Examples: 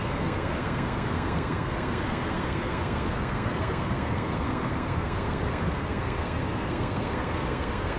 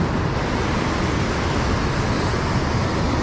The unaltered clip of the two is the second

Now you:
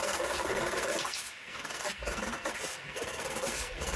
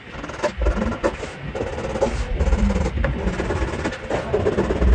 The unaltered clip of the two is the second